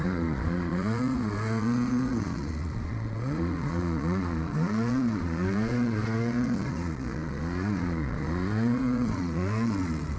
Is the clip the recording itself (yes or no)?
no